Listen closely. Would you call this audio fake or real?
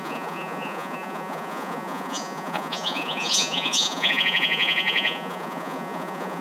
fake